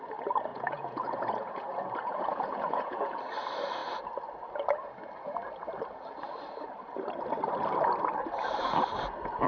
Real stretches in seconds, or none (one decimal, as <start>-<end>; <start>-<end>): 0.0-0.5; 3.2-9.5